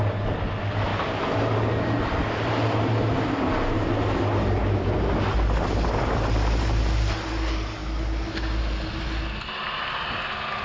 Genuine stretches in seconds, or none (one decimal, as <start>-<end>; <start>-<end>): 0.0-10.6